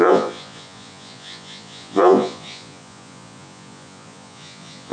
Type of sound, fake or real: fake